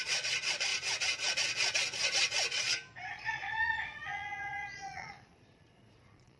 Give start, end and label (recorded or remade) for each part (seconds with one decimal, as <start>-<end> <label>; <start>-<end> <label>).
0.0-0.7 remade; 0.7-3.1 recorded; 3.1-6.4 remade